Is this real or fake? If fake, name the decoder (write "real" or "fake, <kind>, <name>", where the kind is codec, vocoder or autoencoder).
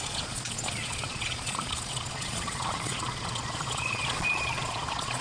fake, vocoder, Vocos